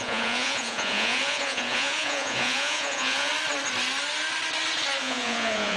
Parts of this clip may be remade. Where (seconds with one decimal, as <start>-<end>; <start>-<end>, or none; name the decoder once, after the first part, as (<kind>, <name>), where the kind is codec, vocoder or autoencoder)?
0.0-3.3 (vocoder, Vocos); 5.0-5.8

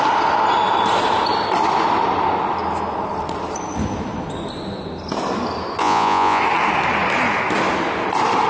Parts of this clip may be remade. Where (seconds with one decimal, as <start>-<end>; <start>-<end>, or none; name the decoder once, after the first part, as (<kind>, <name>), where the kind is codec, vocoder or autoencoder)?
5.8-6.4 (vocoder, Vocos)